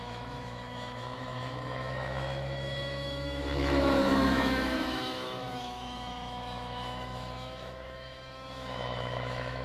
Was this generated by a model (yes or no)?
yes